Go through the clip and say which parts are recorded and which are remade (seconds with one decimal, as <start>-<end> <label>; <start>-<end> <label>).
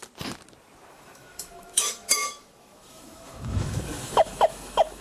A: 0.0-0.9 recorded; 0.9-5.0 remade